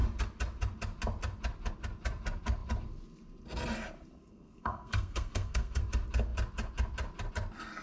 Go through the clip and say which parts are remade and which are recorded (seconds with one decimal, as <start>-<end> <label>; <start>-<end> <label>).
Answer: 0.0-4.2 recorded; 4.2-5.8 remade; 5.8-7.8 recorded